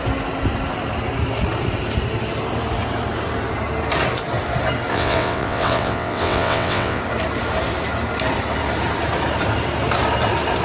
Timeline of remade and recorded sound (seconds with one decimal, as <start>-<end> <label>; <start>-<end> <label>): 0.0-4.9 recorded; 4.9-7.0 remade; 7.0-10.6 recorded